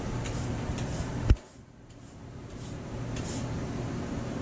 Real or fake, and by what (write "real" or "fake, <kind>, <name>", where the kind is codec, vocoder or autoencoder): fake, vocoder, BigVGAN v2